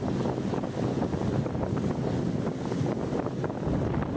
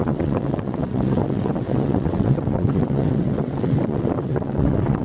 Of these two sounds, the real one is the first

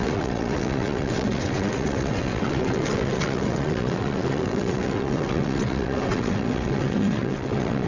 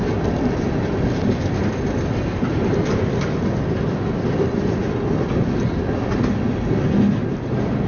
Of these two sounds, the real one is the second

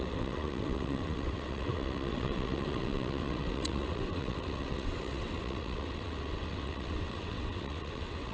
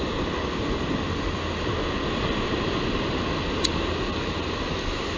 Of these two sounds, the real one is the second